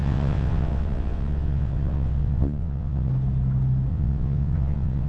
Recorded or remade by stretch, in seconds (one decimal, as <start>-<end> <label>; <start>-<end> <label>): 0.0-3.1 remade; 3.1-3.9 recorded; 3.9-5.1 remade